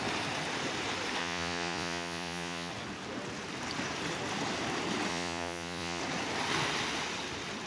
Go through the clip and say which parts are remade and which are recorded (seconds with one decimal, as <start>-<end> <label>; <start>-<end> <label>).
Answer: 0.0-1.2 recorded; 1.2-2.7 remade; 2.7-5.1 recorded; 5.1-6.0 remade; 6.0-7.7 recorded

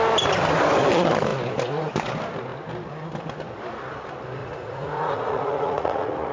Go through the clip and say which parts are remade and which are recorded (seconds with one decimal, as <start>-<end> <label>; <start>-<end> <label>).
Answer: 0.0-4.4 recorded; 4.4-6.3 remade

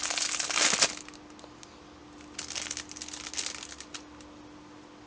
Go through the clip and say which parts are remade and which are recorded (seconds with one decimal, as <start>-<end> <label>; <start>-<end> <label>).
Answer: 0.0-5.1 recorded

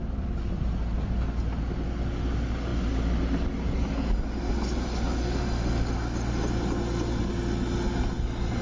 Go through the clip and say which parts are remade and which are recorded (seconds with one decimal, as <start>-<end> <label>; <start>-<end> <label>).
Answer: 0.0-8.6 recorded